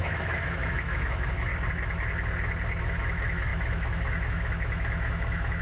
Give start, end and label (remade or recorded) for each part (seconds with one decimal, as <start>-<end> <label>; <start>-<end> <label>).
0.0-1.5 remade; 1.5-2.8 recorded; 2.8-5.6 remade